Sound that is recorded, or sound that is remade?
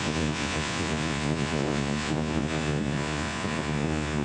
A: remade